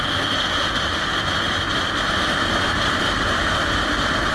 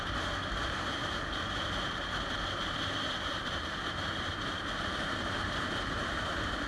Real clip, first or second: first